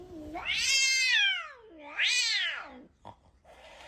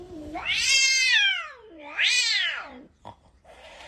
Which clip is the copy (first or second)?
second